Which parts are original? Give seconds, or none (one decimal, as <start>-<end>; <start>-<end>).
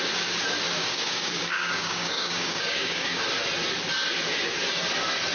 0.0-0.8; 3.2-5.3